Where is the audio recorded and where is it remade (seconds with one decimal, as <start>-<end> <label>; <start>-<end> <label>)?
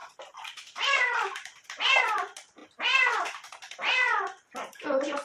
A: 0.0-1.7 remade; 1.7-5.2 recorded